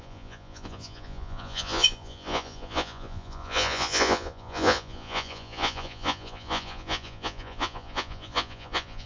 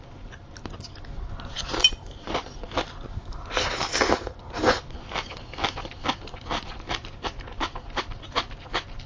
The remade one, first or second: first